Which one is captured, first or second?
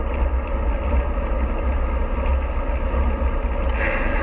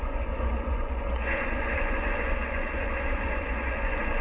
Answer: first